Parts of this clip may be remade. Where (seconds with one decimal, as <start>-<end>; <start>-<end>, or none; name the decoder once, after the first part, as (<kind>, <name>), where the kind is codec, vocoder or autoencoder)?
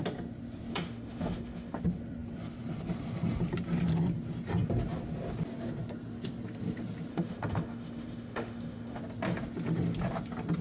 0.7-1.8 (autoencoder, DAC-VAE); 7.1-9.0